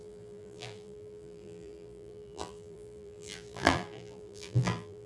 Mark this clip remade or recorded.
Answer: remade